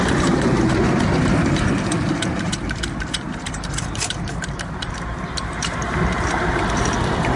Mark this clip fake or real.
fake